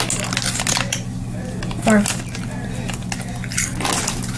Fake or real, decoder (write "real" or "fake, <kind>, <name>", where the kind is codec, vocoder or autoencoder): real